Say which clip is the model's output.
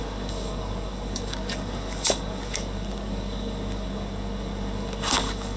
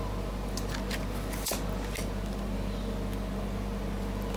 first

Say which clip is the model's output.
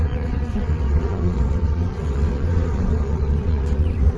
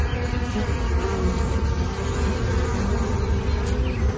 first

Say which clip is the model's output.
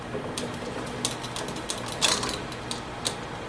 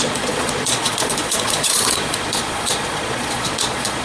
second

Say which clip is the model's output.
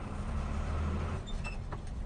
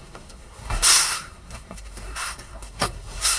second